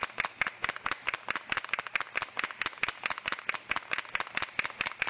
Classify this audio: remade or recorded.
recorded